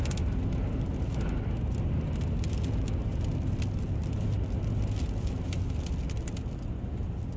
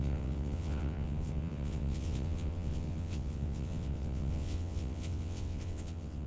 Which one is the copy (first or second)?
second